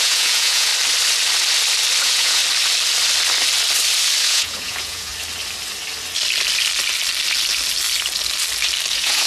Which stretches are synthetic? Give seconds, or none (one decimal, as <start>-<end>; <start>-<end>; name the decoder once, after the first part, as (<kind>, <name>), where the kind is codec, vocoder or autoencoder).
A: 0.0-0.7 (vocoder, Vocos); 2.0-2.4; 4.2-5.1; 8.9-9.3